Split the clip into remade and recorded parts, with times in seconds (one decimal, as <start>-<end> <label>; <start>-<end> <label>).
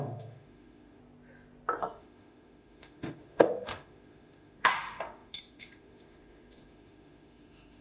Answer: 0.0-1.0 remade; 1.0-1.8 recorded; 1.8-7.8 remade